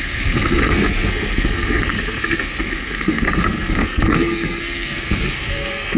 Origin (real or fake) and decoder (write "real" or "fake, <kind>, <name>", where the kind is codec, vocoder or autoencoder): fake, codec, SNAC